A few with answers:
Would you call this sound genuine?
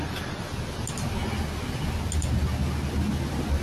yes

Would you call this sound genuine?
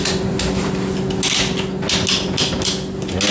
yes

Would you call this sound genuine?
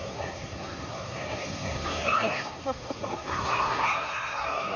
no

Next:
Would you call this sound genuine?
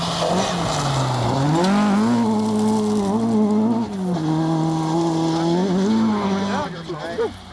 yes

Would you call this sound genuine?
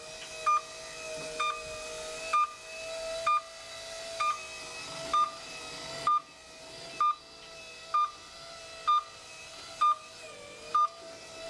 yes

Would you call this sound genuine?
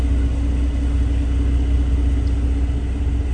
yes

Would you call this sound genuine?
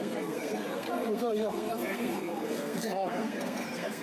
no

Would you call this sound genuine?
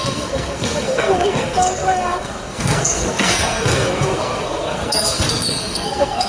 no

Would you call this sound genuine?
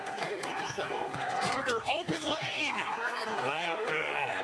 no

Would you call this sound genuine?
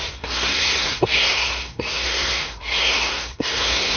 no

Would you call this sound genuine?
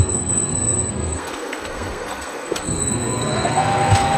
no